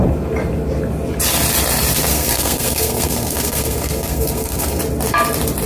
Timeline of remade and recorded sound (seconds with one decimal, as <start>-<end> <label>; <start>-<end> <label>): 0.0-2.1 recorded; 2.1-4.8 remade; 4.8-5.7 recorded